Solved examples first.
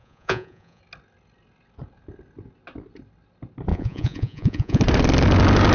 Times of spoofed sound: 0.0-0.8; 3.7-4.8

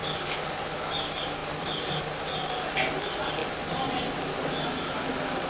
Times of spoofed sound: none

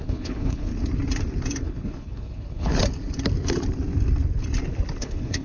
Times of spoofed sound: 0.0-0.7; 1.6-2.7; 5.0-5.4

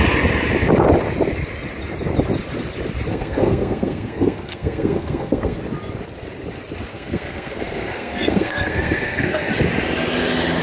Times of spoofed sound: 3.1-5.6; 6.9-9.5

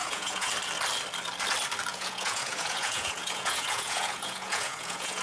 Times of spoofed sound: 0.0-0.5; 1.9-5.2

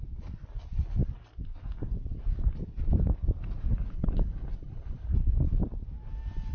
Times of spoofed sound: 3.7-5.1